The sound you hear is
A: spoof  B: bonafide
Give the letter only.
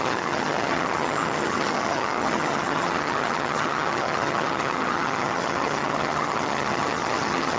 A